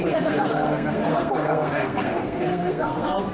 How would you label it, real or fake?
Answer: fake